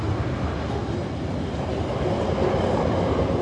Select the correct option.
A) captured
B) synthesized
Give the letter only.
A